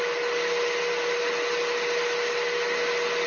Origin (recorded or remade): recorded